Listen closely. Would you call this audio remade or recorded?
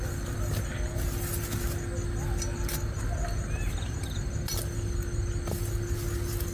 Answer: recorded